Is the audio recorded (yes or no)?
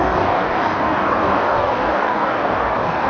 no